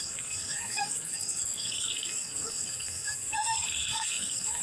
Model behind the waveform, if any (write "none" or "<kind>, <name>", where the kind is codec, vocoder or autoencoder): codec, SNAC